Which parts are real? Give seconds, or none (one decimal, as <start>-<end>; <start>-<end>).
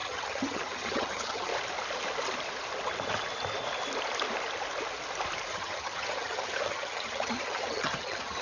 1.5-5.5